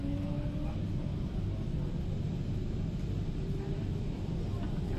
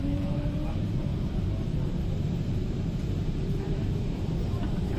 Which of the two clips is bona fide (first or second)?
first